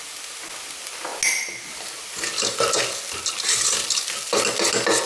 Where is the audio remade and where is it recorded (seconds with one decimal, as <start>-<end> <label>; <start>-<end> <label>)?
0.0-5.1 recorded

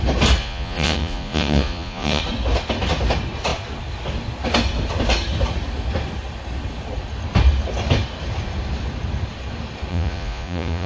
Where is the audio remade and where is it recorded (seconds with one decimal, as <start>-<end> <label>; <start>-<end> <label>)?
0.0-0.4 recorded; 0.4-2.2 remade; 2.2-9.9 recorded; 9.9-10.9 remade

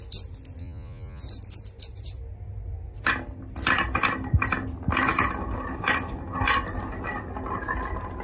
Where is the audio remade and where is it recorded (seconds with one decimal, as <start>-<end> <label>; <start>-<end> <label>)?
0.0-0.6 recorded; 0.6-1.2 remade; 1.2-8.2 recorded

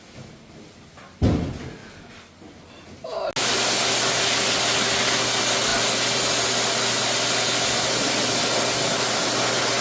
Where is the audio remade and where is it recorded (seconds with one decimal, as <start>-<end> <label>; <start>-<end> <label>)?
0.0-9.8 recorded

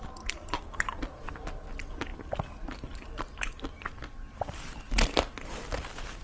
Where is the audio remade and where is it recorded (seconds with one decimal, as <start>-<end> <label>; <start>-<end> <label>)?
0.0-6.2 recorded

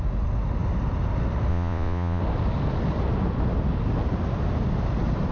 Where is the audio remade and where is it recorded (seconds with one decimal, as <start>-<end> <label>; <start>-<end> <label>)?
0.0-1.5 recorded; 1.5-2.2 remade; 2.2-5.3 recorded

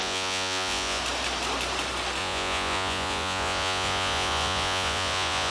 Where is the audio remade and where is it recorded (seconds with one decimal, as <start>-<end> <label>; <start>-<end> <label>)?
0.0-1.0 remade; 1.0-2.2 recorded; 2.2-5.5 remade